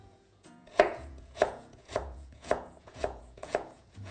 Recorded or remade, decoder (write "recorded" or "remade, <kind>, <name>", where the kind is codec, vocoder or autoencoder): remade, vocoder, Vocos